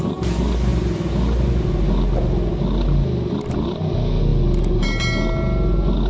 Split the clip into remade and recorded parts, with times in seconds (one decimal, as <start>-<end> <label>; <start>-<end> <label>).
0.0-6.1 recorded